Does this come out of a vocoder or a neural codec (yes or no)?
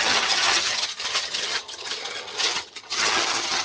yes